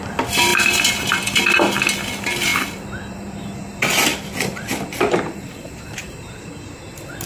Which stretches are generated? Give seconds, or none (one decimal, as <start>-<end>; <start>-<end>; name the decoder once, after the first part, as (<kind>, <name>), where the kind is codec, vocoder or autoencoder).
0.5-1.2 (vocoder, BigVGAN v2); 4.1-5.9